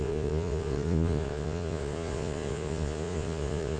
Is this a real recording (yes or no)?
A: no